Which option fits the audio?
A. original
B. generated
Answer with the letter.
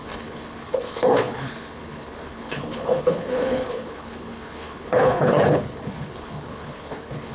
B